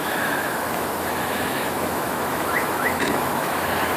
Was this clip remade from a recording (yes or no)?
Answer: yes